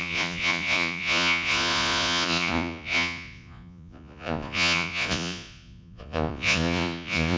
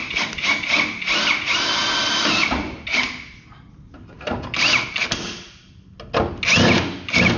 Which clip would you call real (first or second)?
second